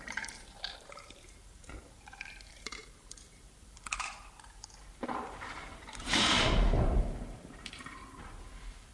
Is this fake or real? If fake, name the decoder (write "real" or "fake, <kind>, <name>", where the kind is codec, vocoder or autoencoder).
fake, vocoder, BigVGAN v2